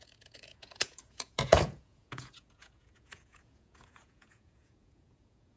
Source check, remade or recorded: remade